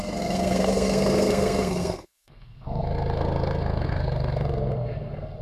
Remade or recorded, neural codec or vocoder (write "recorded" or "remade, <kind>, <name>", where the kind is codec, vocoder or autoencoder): remade, codec, SNAC